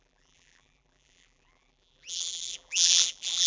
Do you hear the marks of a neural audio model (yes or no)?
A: yes